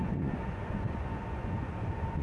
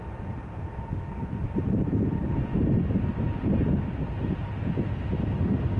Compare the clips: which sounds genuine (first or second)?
second